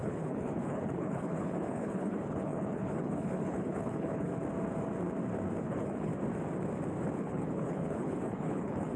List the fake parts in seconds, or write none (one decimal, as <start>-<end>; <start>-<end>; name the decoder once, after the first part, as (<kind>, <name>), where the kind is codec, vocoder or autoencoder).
0.0-4.3 (codec, HILCodec); 5.6-6.1; 7.2-9.0